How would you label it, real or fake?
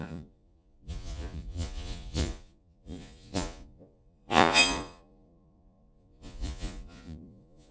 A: fake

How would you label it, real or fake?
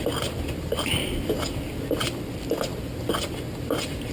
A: real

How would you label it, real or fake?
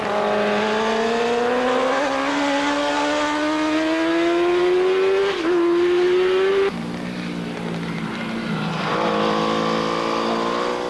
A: real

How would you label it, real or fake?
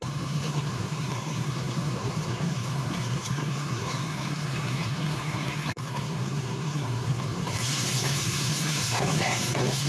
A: fake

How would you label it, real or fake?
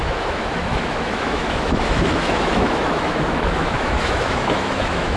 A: fake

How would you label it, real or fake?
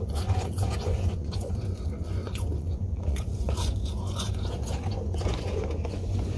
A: fake